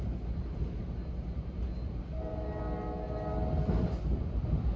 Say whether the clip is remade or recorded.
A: recorded